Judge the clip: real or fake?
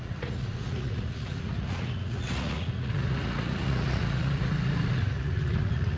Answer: fake